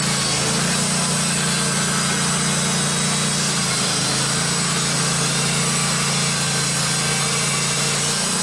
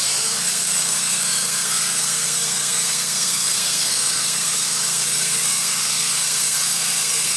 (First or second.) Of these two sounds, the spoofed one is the second